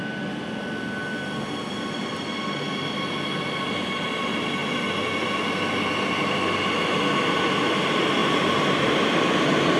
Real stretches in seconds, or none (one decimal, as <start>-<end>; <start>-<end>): 0.0-9.8